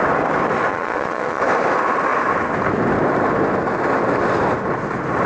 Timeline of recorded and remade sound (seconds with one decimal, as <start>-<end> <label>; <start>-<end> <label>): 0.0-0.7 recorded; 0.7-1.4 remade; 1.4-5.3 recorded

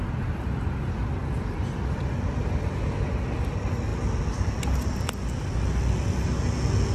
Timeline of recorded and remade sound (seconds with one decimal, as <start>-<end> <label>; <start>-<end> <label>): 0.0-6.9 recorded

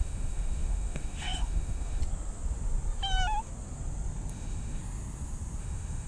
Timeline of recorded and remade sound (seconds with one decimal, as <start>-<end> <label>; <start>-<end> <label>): 0.0-2.0 remade; 2.0-4.3 recorded; 4.3-4.8 remade; 4.8-5.6 recorded; 5.6-6.1 remade